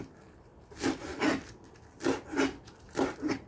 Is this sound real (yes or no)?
yes